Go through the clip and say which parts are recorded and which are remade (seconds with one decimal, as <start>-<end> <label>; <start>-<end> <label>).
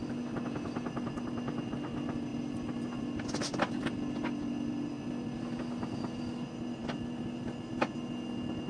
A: 0.0-8.7 recorded